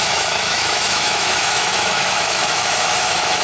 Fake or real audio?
fake